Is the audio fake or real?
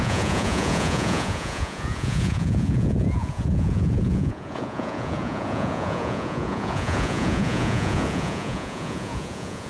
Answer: fake